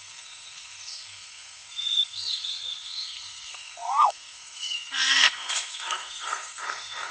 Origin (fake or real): fake